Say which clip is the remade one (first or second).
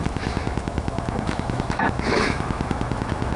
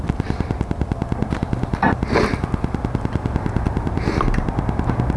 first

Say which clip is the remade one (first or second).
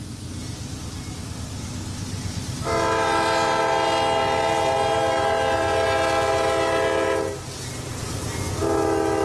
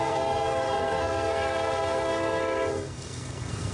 second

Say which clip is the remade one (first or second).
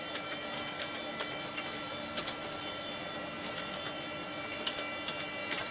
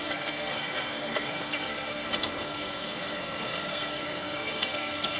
second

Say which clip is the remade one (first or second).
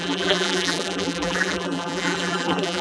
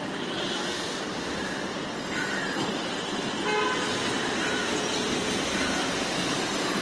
first